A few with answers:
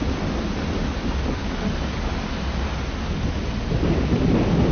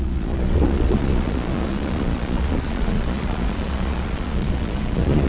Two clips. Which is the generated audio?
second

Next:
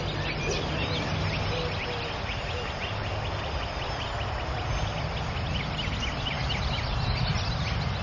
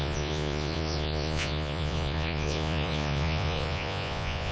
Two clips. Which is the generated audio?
second